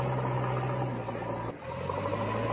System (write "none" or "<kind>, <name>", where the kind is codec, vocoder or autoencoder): none